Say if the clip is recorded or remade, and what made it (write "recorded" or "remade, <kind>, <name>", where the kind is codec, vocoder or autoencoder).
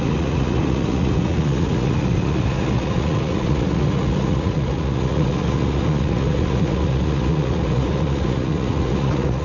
remade, vocoder, Vocos